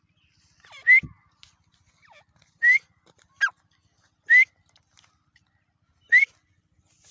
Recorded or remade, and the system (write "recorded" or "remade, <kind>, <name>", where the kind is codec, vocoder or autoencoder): recorded